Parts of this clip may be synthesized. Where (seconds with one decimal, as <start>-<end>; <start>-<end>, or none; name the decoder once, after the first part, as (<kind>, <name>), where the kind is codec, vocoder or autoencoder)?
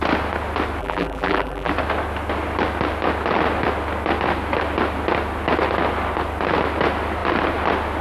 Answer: 0.8-1.7 (vocoder, BigVGAN v2)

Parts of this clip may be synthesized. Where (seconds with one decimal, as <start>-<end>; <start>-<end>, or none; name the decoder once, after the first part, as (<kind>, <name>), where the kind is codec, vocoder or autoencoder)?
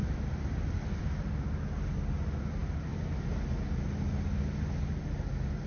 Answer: 0.0-1.4 (vocoder, BigVGAN v2)